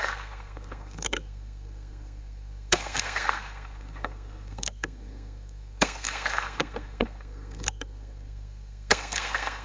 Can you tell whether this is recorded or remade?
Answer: remade